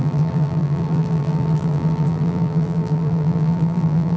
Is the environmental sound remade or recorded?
remade